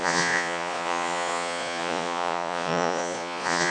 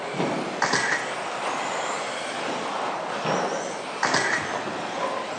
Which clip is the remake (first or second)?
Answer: first